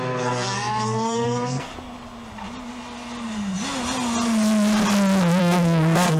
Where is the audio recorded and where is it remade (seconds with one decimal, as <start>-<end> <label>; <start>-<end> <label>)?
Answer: 0.0-1.7 remade; 1.7-5.4 recorded; 5.4-6.2 remade

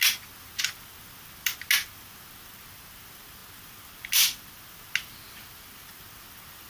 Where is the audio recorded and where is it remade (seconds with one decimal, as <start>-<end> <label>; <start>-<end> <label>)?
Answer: 0.0-6.7 recorded

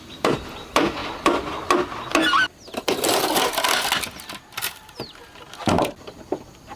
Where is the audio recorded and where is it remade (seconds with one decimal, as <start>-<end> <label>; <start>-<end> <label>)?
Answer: 0.0-6.8 recorded